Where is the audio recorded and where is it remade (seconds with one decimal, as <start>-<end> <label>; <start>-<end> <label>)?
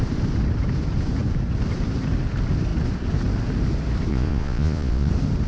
0.0-4.1 recorded; 4.1-5.1 remade; 5.1-5.5 recorded